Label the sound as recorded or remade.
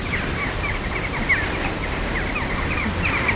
recorded